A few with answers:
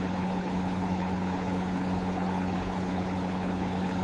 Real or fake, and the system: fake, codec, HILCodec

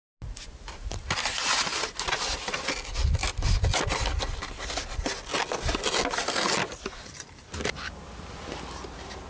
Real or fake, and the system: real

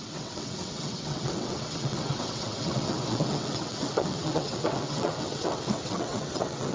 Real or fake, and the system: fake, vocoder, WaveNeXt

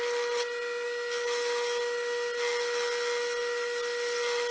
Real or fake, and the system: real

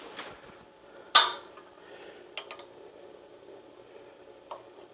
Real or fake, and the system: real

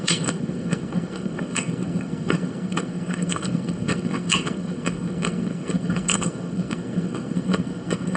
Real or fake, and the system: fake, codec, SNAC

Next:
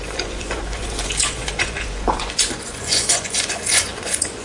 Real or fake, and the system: fake, vocoder, Vocos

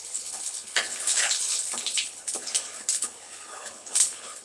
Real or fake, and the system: fake, codec, HILCodec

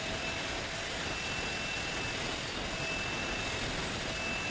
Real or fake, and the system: real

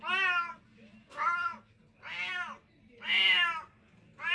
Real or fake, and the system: real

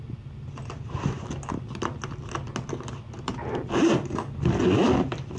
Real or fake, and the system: real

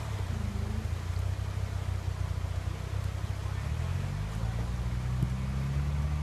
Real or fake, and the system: real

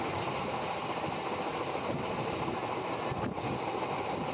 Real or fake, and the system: real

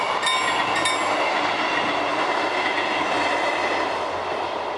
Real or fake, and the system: real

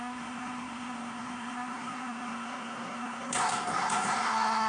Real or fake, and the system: fake, codec, SNAC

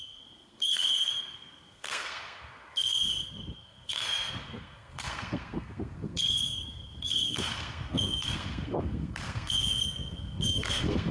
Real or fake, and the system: fake, codec, SNAC